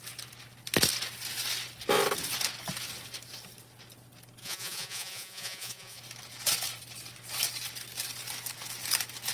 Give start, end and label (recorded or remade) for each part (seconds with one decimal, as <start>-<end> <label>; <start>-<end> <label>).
0.0-4.4 recorded; 4.4-6.0 remade; 6.0-9.3 recorded